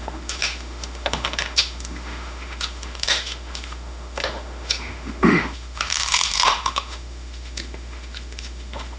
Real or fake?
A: fake